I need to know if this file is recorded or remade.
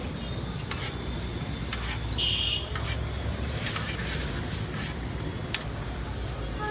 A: recorded